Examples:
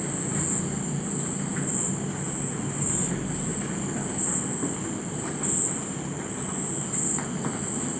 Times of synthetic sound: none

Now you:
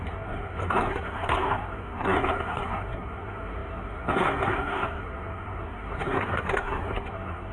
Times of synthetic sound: 0.0-7.5 (codec, SNAC)

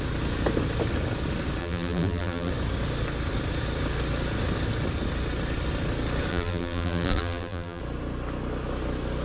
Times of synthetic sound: 1.6-2.5 (vocoder, BigVGAN v2); 6.3-7.8